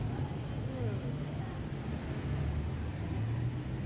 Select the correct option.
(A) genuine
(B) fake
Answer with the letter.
A